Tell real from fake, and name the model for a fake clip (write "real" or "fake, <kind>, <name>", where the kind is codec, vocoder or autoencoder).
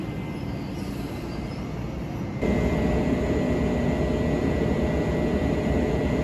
real